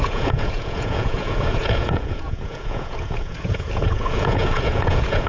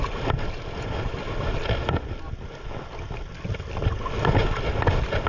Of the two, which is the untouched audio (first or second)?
second